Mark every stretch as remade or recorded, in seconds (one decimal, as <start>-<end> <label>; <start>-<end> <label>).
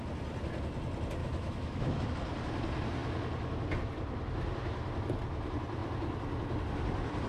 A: 0.0-1.2 recorded; 1.2-2.1 remade; 2.1-7.3 recorded